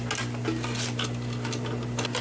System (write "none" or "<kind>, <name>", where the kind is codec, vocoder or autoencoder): none